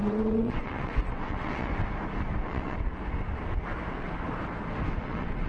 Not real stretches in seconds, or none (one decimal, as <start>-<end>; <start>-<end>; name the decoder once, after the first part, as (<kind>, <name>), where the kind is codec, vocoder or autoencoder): 0.0-1.7 (vocoder, WaveNeXt); 2.4-2.9; 5.0-5.5